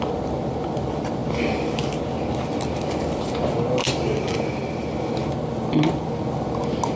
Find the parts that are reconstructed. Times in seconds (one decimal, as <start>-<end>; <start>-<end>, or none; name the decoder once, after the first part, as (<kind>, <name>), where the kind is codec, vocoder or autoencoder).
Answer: none